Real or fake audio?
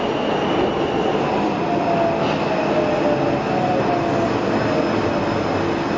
real